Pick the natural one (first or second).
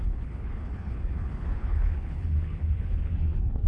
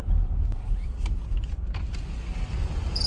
second